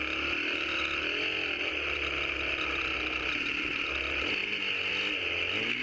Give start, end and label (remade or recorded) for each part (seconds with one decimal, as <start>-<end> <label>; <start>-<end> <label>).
0.0-5.8 recorded